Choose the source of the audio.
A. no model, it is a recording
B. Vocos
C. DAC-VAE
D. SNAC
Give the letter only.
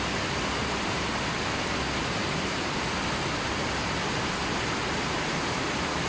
A